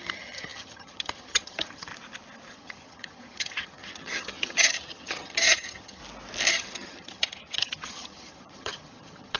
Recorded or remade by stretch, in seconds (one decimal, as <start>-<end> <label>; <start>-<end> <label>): 0.0-1.9 remade; 1.9-2.5 recorded; 2.5-6.0 remade; 6.0-6.5 recorded; 6.5-9.4 remade